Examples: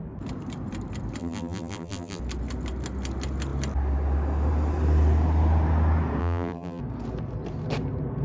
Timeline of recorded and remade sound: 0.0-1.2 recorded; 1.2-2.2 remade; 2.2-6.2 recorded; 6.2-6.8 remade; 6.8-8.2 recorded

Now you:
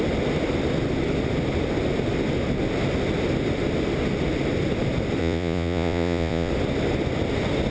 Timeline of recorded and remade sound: 0.0-5.2 recorded; 5.2-6.5 remade; 6.5-7.7 recorded

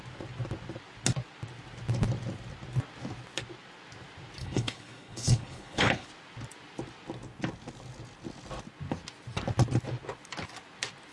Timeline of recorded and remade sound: 0.0-4.4 recorded; 4.4-6.1 remade; 6.1-11.1 recorded